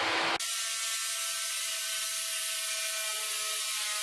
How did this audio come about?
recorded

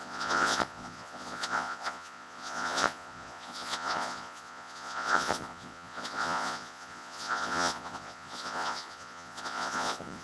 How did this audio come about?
remade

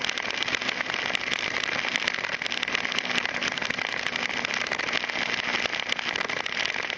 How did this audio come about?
recorded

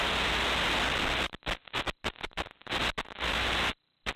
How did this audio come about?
recorded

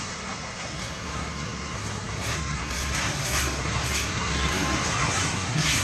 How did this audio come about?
remade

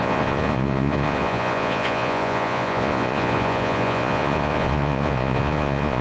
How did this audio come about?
remade